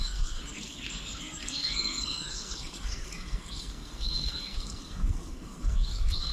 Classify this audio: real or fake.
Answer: fake